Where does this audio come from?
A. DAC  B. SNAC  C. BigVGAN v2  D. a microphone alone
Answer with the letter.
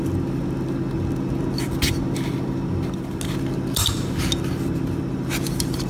D